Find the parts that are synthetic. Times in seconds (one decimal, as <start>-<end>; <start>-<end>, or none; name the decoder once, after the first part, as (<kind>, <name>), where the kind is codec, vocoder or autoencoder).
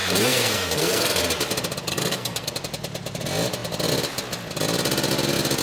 0.0-1.2 (codec, SNAC); 1.9-2.5